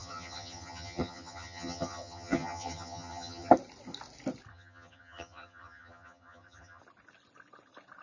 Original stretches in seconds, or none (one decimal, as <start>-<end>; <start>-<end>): 3.5-4.5; 6.8-8.0